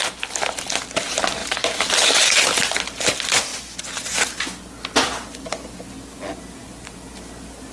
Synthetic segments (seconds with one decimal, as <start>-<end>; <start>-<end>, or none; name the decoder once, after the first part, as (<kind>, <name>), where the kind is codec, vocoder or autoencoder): 1.4-1.9 (vocoder, BigVGAN v2)